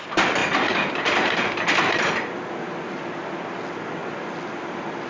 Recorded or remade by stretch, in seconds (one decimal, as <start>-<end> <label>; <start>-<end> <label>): 0.0-5.1 recorded